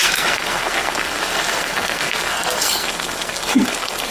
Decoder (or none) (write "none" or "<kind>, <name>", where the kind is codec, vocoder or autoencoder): codec, SNAC